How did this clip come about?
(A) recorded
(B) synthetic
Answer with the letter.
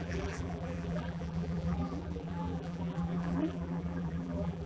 B